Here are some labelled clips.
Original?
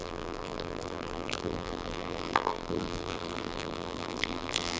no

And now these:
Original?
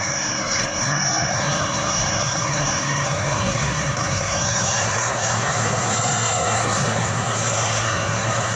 no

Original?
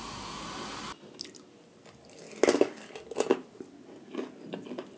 yes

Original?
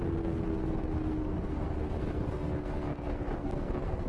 no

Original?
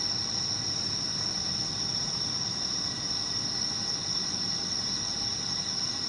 yes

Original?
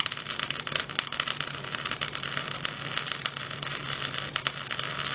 yes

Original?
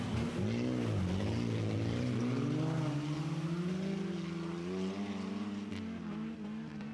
yes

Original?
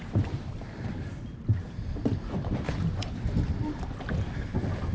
yes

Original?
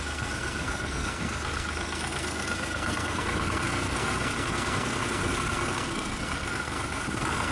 no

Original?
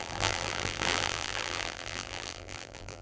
no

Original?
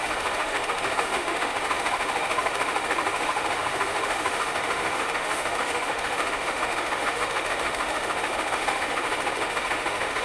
no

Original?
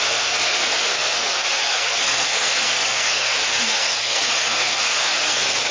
no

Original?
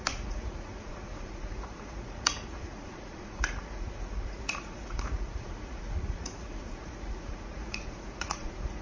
no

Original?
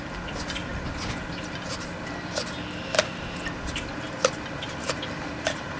yes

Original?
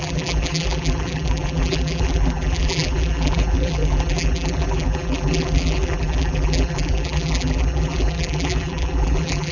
no